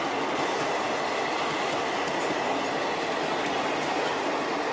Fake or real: real